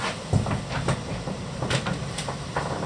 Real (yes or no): yes